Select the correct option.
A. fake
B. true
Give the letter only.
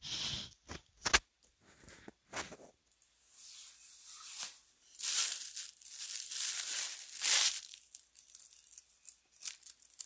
B